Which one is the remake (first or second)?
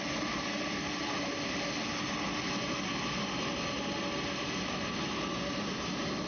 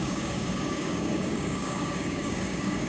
second